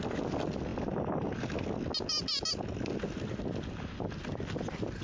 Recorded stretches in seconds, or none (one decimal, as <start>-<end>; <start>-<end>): 0.0-5.0